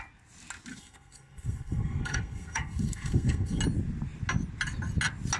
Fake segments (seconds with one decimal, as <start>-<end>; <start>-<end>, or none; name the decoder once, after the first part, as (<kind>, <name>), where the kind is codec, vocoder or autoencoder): 0.7-3.6 (codec, SNAC)